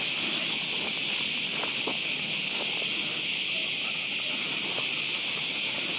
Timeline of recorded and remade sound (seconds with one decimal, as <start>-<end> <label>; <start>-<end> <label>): 0.0-6.0 recorded